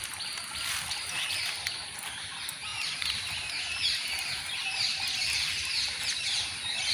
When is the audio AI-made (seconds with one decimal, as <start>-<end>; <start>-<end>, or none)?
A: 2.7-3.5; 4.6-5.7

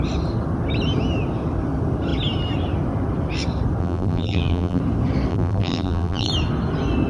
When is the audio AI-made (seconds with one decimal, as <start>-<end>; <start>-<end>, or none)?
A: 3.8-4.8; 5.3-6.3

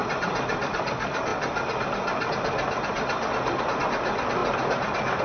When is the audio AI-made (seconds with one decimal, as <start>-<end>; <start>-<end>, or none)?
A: 0.5-4.4

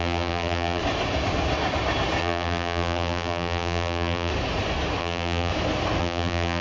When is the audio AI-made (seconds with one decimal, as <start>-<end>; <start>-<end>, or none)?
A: 0.0-0.8; 2.2-4.3; 5.0-5.5; 6.0-6.6

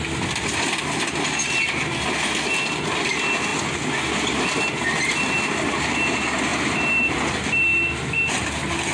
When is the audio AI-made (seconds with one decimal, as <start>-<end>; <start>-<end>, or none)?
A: none

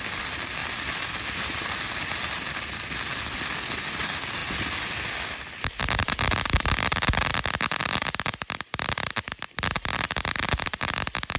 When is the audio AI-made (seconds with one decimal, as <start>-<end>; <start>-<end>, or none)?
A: 0.0-11.4